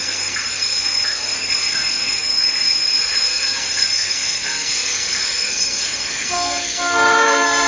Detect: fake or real fake